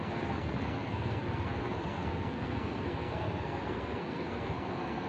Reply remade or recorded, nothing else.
remade